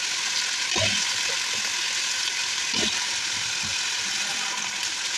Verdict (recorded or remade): recorded